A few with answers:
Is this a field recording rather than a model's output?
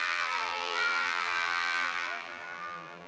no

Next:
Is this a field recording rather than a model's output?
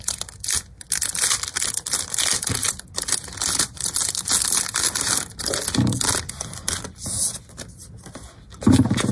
yes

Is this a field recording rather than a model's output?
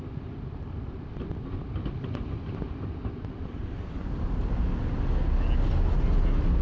yes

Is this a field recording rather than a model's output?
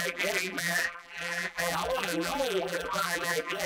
no